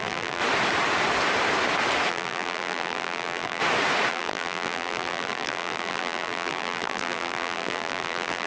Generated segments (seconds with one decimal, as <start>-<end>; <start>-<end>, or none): 0.0-0.4; 2.1-3.6; 4.1-8.5